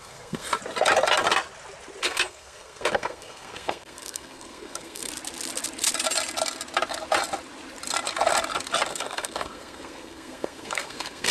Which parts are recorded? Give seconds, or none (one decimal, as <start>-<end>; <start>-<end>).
0.5-2.0; 5.1-8.9